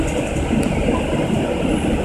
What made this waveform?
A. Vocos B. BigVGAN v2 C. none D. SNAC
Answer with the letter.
C